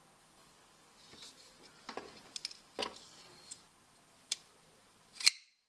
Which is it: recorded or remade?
recorded